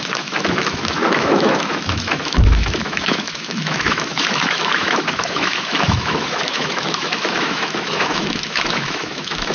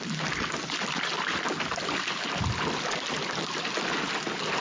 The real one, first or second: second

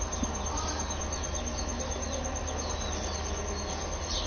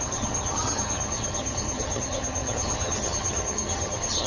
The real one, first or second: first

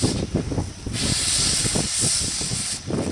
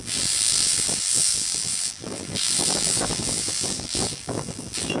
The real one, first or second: first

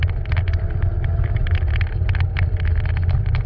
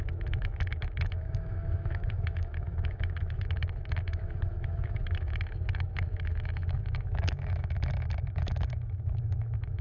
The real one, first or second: first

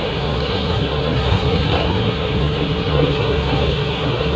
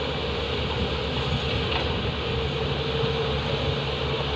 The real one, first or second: second